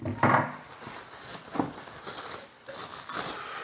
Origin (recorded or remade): recorded